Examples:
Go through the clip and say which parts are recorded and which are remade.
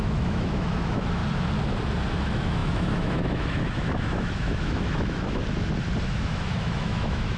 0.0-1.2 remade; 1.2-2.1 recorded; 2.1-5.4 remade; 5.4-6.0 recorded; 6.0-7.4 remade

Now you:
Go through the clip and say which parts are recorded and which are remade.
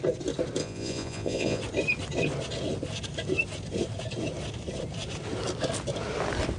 0.0-0.6 recorded; 0.6-1.6 remade; 1.6-6.6 recorded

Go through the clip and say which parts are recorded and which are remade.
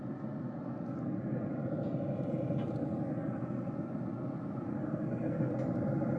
0.0-4.7 recorded; 4.7-5.5 remade; 5.5-6.2 recorded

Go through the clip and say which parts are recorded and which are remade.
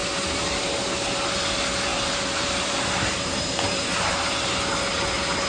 0.0-0.7 remade; 0.7-1.9 recorded; 1.9-4.1 remade; 4.1-5.5 recorded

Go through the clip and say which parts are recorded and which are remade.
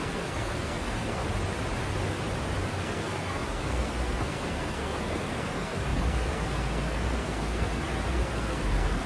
0.0-1.2 remade; 1.2-2.7 recorded; 2.7-9.1 remade